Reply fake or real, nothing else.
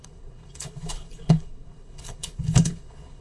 fake